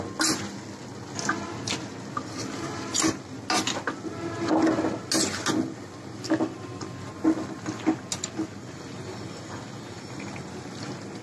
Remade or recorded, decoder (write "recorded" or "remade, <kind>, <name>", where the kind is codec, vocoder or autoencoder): recorded